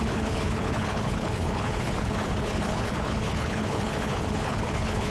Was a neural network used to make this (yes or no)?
yes